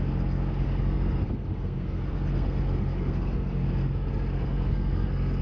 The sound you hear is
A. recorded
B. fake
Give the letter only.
B